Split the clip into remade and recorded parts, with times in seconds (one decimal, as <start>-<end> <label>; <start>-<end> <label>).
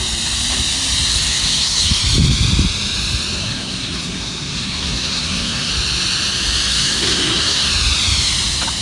0.0-1.1 recorded; 1.1-2.0 remade; 2.0-3.4 recorded; 3.4-5.7 remade; 5.7-6.7 recorded; 6.7-7.7 remade; 7.7-8.8 recorded